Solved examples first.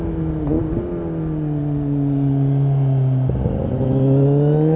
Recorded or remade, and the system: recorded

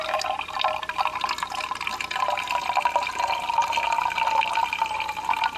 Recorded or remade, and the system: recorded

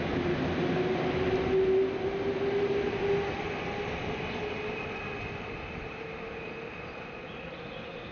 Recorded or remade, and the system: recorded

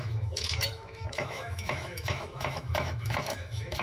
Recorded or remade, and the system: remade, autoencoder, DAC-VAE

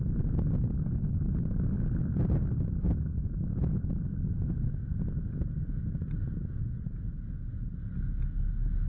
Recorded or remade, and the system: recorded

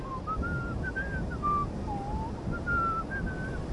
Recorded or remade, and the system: recorded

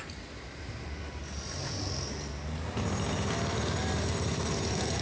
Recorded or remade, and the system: recorded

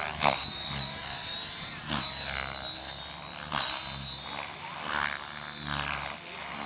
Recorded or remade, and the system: recorded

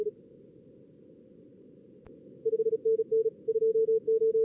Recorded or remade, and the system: recorded